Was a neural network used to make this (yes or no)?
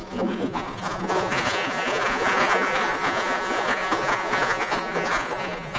yes